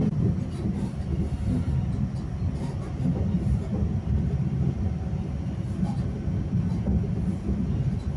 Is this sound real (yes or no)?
yes